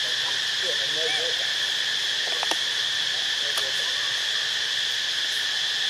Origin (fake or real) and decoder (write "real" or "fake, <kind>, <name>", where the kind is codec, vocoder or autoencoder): real